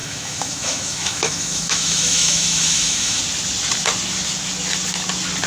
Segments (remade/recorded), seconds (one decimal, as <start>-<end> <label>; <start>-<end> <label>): 0.0-3.2 remade; 3.2-5.5 recorded